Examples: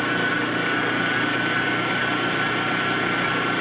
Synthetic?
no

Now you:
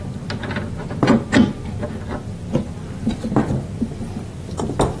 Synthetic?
no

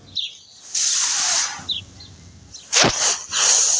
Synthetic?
no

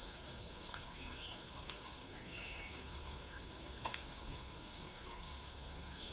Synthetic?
yes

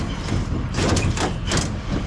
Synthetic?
no